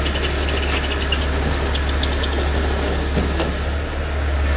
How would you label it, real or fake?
real